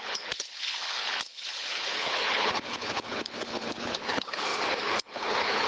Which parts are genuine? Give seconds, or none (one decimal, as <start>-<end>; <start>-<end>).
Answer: none